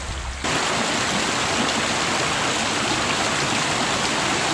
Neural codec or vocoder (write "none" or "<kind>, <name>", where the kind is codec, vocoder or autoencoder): none